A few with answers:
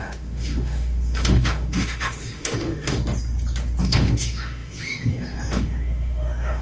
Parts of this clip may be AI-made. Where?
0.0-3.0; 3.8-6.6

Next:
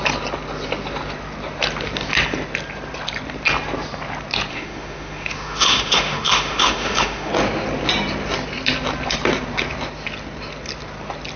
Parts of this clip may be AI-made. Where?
4.5-7.3

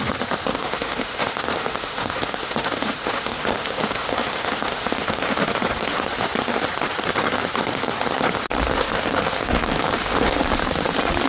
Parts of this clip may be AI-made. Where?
0.5-5.4; 8.7-10.4

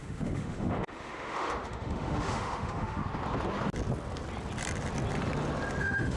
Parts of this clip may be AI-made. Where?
0.0-3.0; 5.8-6.2

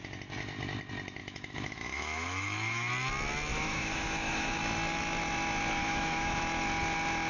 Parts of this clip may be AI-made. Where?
1.2-2.9; 3.5-4.6; 5.8-6.4